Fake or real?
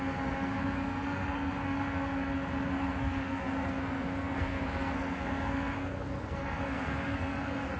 fake